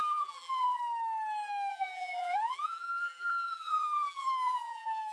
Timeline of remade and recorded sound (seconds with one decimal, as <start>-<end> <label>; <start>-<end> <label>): 0.0-0.8 remade; 0.8-1.7 recorded; 1.7-5.1 remade